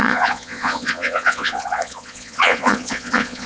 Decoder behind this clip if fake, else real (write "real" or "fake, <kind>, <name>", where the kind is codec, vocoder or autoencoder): fake, vocoder, Vocos